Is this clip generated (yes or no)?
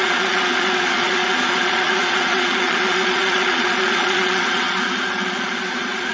yes